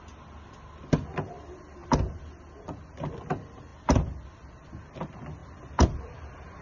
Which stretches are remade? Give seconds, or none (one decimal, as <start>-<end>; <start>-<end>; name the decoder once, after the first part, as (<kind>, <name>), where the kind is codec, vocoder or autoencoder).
5.4-6.0 (vocoder, BigVGAN v2)

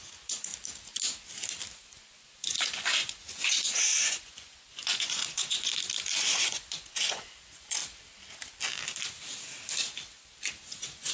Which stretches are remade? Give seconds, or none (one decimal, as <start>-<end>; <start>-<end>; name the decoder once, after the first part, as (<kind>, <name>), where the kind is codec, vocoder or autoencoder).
0.0-0.5 (vocoder, Vocos); 1.8-5.7; 6.2-7.8; 10.6-11.1

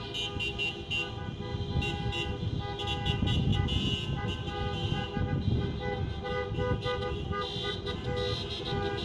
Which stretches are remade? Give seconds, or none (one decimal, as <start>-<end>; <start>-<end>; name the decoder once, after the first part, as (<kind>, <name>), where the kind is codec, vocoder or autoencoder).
none

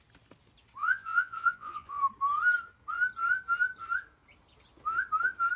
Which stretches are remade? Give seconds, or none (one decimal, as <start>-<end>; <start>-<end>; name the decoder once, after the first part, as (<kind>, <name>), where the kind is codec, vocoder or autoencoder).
0.8-2.0 (vocoder, Vocos)

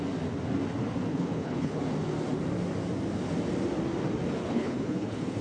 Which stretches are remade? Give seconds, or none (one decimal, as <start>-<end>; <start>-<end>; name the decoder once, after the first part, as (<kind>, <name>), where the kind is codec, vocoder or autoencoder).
1.1-1.8 (codec, HILCodec); 4.4-5.4

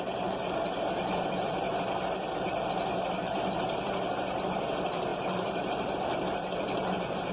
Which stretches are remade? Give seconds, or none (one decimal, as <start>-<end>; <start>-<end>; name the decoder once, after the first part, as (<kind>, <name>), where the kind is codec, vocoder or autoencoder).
0.0-7.3 (vocoder, BigVGAN v2)

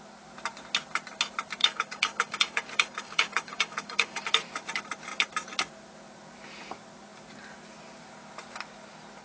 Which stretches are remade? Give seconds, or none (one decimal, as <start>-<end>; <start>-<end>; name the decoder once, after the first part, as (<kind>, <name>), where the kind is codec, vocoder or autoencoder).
1.6-4.2 (codec, DAC)